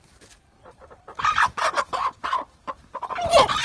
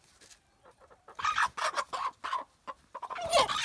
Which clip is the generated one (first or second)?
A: first